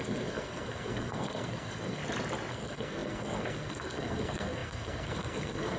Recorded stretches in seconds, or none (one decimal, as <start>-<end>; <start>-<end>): 2.0-2.5